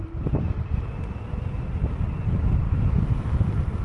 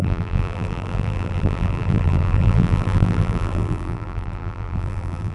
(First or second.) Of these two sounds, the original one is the first